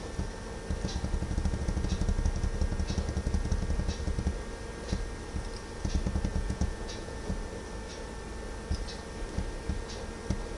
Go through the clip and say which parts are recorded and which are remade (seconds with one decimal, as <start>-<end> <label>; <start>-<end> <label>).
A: 0.0-6.3 recorded; 6.3-7.3 remade; 7.3-10.6 recorded